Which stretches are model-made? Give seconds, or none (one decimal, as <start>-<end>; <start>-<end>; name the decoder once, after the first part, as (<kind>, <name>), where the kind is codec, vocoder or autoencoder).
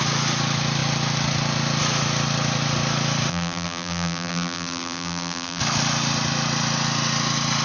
3.3-5.6 (vocoder, BigVGAN v2)